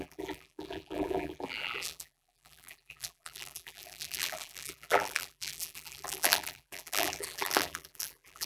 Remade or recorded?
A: remade